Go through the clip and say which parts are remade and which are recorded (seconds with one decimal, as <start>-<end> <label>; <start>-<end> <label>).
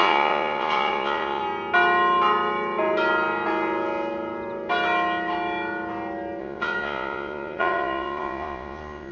0.0-1.4 remade; 1.4-6.4 recorded; 6.4-9.1 remade